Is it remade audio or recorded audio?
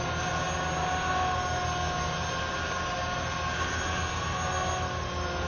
recorded